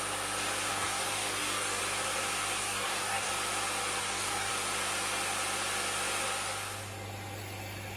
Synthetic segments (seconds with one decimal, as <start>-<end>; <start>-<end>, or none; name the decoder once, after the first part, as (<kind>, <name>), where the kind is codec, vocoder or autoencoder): 0.7-1.8 (codec, DAC); 2.6-3.3; 4.0-4.5